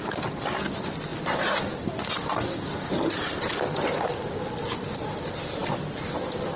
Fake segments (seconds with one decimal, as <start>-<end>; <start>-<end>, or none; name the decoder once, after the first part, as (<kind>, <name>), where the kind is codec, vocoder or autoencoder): none